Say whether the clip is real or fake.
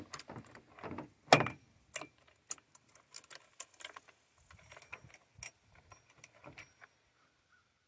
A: real